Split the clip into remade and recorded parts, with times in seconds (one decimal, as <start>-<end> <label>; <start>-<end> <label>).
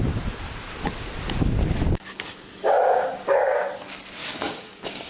0.0-2.6 recorded; 2.6-3.6 remade; 3.6-4.2 recorded; 4.2-5.1 remade